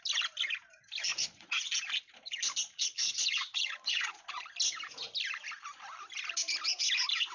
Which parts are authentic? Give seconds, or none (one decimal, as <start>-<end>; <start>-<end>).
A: 0.0-1.1; 1.6-2.6; 4.4-7.3